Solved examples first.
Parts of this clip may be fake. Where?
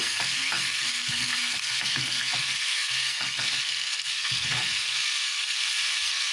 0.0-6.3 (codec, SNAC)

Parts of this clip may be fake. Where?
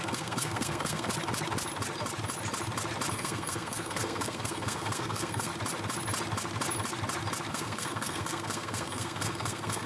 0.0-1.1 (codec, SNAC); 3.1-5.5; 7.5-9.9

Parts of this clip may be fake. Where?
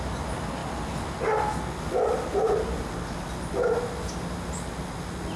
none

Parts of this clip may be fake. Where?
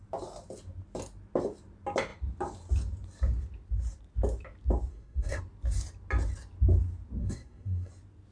4.9-5.4 (codec, SNAC); 7.2-7.9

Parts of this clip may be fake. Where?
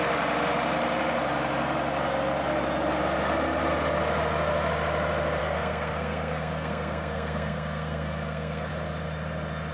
5.4-8.7 (codec, SNAC)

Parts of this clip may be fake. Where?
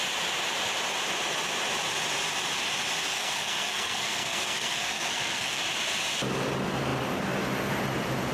3.1-5.6 (codec, SNAC)